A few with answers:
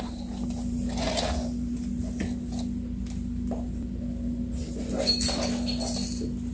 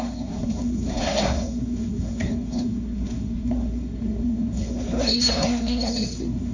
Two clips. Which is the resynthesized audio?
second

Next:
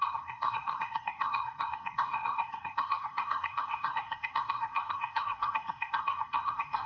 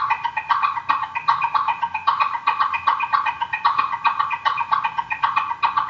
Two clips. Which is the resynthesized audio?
first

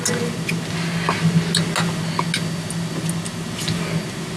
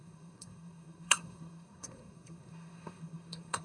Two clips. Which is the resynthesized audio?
second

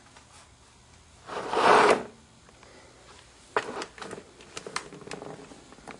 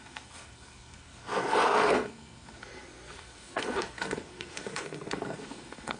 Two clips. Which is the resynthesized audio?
second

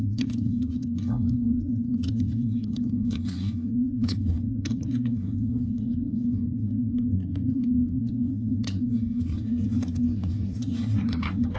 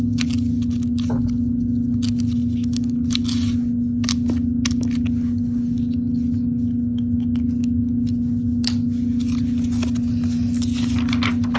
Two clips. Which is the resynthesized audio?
first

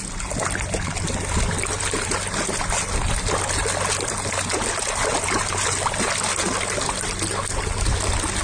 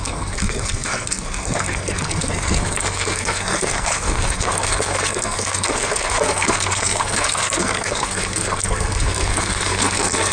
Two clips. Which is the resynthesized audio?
second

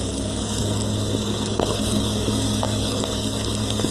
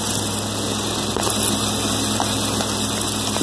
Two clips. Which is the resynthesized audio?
first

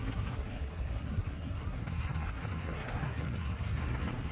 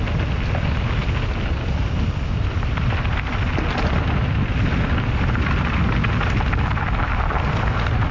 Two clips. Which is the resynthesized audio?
first